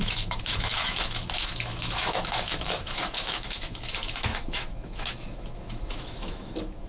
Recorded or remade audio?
remade